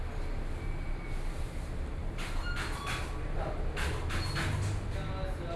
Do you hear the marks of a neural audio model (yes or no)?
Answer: no